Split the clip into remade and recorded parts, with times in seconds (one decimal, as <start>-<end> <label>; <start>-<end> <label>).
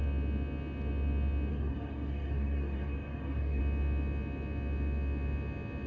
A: 0.0-1.5 recorded; 1.5-3.6 remade; 3.6-5.9 recorded